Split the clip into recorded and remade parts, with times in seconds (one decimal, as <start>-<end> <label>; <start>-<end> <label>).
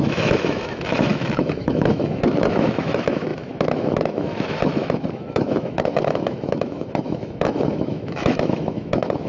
0.0-9.3 remade